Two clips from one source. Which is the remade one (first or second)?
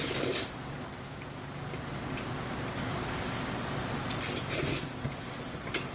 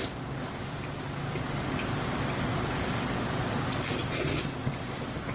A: second